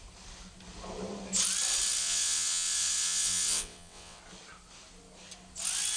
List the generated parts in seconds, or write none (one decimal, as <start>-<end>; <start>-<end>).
2.0-4.2